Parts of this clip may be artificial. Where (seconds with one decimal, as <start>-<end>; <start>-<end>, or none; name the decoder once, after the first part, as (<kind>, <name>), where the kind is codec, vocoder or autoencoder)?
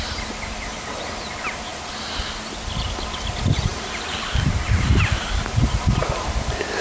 none